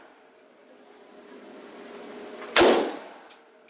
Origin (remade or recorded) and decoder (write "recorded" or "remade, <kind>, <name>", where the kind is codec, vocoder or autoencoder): remade, vocoder, BigVGAN v2